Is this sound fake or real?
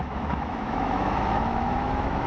fake